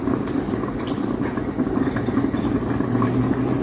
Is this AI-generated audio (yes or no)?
no